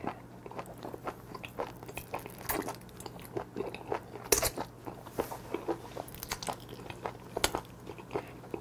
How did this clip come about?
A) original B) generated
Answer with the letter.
A